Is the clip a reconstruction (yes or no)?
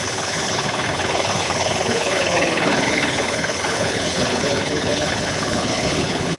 yes